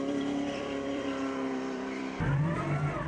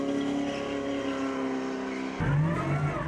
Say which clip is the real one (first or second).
second